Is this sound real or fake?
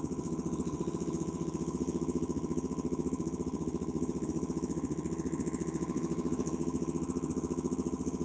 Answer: fake